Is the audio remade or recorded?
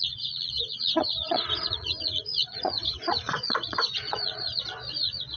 remade